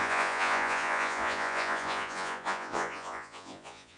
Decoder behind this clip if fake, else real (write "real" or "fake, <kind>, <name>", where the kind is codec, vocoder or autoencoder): fake, vocoder, Vocos